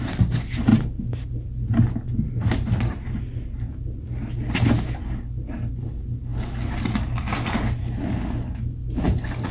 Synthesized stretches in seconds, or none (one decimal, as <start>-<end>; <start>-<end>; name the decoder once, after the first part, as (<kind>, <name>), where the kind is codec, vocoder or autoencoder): none